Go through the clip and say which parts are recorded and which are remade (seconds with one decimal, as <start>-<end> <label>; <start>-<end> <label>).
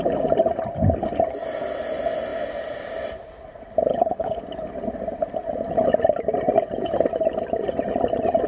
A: 0.0-3.9 recorded; 3.9-4.4 remade; 4.4-8.5 recorded